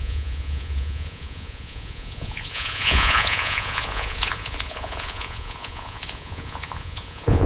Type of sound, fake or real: fake